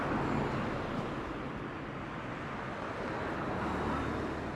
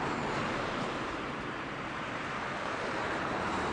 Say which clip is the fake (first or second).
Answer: second